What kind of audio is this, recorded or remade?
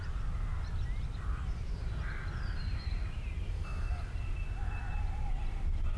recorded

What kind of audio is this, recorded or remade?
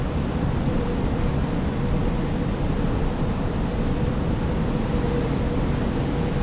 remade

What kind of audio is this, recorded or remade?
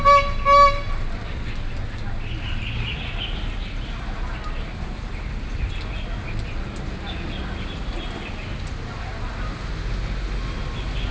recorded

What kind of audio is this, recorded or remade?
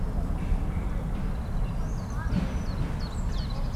recorded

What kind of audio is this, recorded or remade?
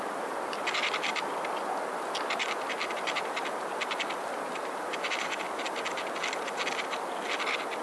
recorded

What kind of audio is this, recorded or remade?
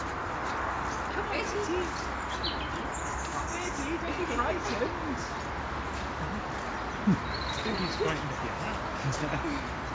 recorded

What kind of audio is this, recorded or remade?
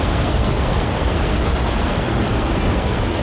remade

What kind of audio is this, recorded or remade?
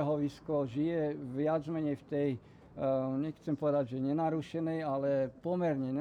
recorded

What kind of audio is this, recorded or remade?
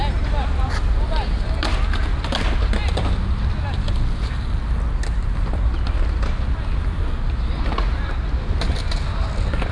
recorded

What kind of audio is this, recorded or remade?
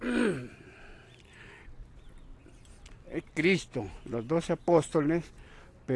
recorded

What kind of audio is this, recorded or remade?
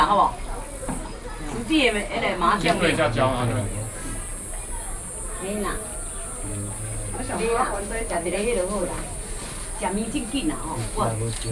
recorded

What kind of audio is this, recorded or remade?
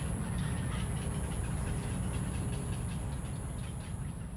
recorded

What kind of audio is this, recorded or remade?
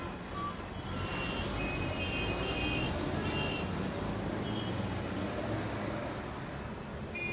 recorded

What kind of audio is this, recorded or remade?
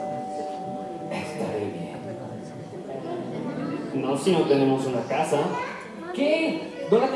recorded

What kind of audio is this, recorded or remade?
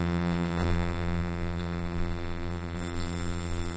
remade